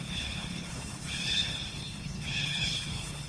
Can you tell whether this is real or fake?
fake